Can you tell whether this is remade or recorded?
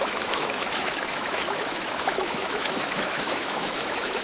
remade